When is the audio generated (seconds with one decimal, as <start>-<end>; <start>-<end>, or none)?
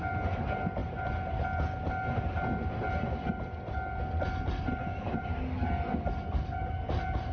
none